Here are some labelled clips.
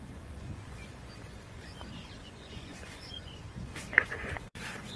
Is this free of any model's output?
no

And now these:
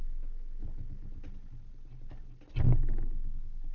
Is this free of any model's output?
yes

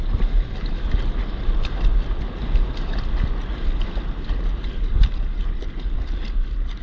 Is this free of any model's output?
yes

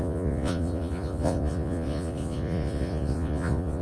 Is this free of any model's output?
no